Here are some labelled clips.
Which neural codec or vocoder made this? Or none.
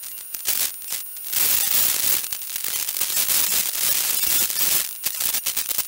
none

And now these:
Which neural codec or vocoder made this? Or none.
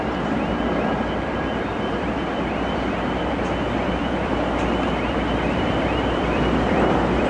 vocoder, BigVGAN v2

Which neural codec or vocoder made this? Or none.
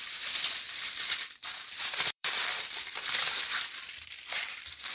vocoder, BigVGAN v2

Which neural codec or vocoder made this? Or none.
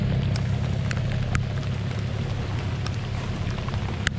none